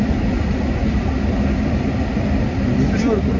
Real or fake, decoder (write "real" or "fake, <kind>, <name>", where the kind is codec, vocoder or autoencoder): real